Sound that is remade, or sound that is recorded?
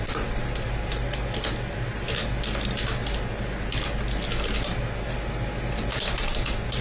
recorded